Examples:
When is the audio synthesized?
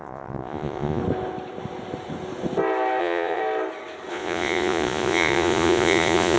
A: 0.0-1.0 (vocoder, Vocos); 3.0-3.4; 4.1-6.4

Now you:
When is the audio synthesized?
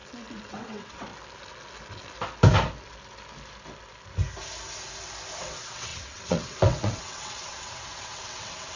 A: 0.5-1.1 (vocoder, WaveNeXt); 5.4-8.8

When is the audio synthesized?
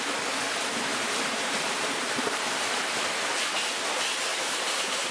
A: 0.9-3.6 (vocoder, BigVGAN v2); 4.3-5.1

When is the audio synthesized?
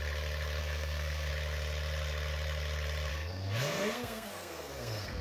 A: 0.6-1.3 (codec, SNAC); 3.1-5.2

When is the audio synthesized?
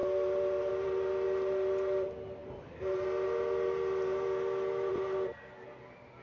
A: none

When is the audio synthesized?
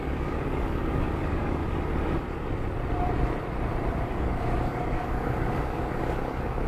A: 0.0-1.6 (codec, DAC); 4.1-6.7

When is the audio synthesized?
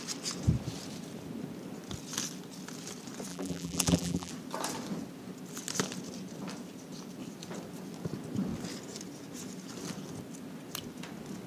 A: 3.3-4.3 (vocoder, BigVGAN v2)